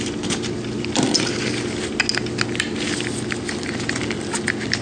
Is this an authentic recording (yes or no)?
yes